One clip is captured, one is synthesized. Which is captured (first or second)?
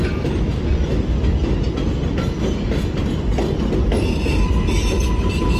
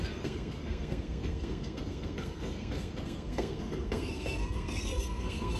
first